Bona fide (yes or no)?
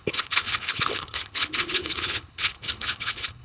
no